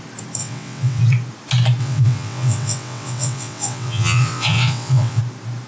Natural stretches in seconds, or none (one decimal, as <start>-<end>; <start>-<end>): 0.0-0.4; 1.0-1.8; 5.2-5.7